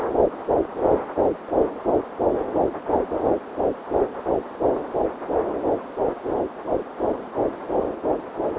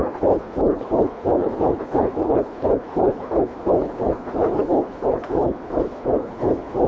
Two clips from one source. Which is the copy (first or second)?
second